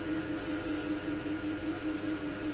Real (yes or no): no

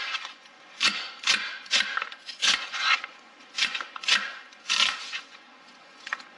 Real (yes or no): no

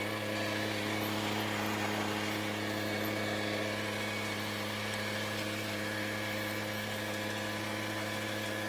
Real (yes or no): yes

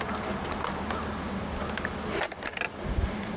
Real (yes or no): yes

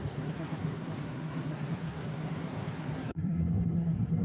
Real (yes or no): no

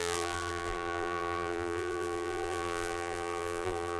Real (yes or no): no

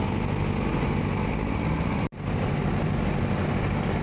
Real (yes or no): yes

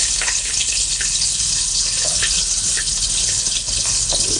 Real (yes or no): no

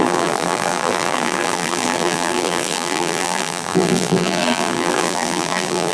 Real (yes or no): no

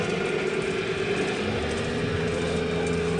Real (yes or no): yes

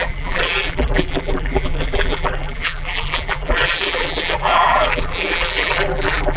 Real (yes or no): no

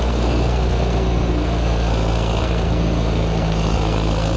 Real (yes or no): no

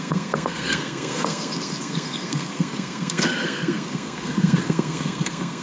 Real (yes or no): no